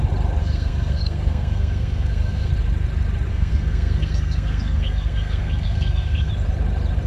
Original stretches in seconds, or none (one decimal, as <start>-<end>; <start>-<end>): 0.0-0.4; 2.5-3.3; 6.3-7.1